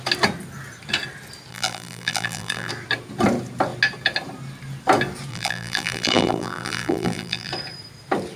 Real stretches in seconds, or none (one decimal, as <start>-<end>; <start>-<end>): 0.0-1.5; 2.7-5.3; 7.5-8.4